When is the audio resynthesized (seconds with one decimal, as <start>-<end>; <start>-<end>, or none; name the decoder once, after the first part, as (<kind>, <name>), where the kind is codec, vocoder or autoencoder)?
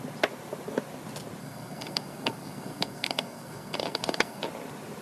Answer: 1.4-4.4 (codec, SNAC)